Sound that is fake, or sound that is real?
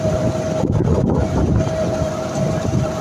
fake